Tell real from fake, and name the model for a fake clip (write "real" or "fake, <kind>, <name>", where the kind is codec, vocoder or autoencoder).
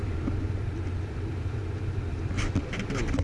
fake, vocoder, BigVGAN v2